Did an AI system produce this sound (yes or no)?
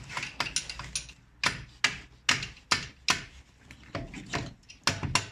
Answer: no